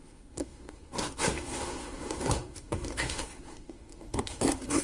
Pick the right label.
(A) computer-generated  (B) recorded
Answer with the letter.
A